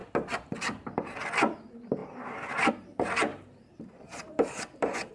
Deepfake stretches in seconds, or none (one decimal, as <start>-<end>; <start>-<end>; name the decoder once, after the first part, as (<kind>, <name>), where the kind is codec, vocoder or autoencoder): 2.0-2.7 (vocoder, BigVGAN v2); 3.3-5.1